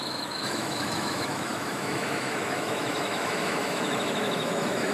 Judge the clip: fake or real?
fake